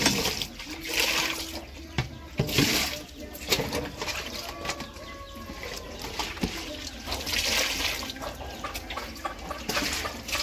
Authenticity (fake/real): real